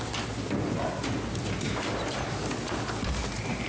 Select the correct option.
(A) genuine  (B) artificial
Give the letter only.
A